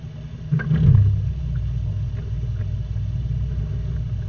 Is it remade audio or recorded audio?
recorded